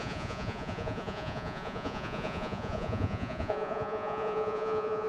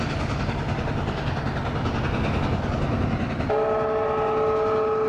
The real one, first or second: second